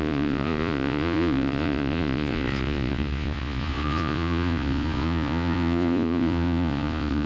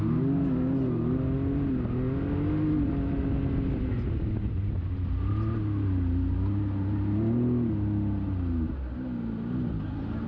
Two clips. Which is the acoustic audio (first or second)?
second